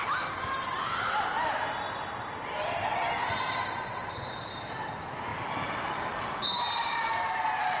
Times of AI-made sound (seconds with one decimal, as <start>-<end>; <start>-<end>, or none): 0.0-7.8